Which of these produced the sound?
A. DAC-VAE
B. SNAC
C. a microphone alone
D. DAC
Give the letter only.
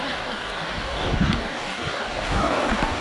D